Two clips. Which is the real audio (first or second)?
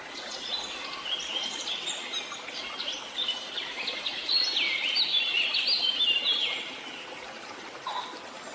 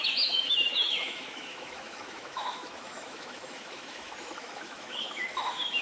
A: first